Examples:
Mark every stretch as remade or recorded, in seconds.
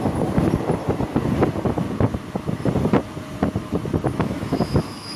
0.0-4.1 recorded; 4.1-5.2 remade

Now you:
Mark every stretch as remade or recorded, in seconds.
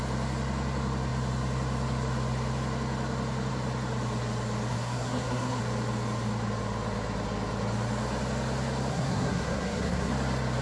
0.0-4.7 recorded; 4.7-5.6 remade; 5.6-8.9 recorded; 8.9-10.1 remade; 10.1-10.6 recorded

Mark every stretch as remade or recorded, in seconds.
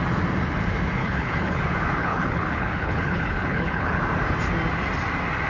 0.0-1.0 recorded; 1.0-1.6 remade; 1.6-2.0 recorded; 2.0-4.0 remade; 4.0-5.5 recorded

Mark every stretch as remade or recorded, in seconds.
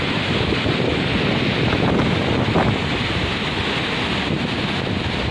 0.0-0.9 remade; 0.9-4.1 recorded; 4.1-5.3 remade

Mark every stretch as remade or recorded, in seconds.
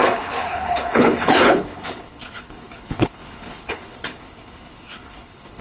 0.0-5.6 remade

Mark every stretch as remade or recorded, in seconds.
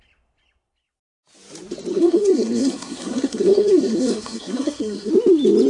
0.0-1.9 recorded; 1.9-5.1 remade; 5.1-5.7 recorded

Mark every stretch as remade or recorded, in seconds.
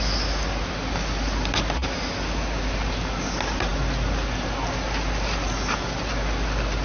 0.0-6.8 recorded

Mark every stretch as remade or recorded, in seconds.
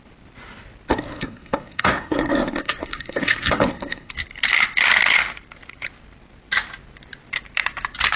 0.0-0.9 recorded; 0.9-4.1 remade; 4.1-8.2 recorded